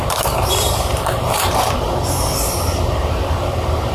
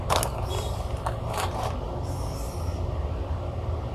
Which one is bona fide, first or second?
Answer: second